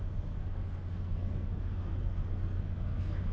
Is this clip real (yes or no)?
no